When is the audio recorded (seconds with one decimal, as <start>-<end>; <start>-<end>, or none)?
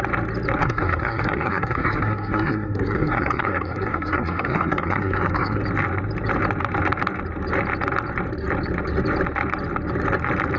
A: 0.0-0.6; 5.6-10.6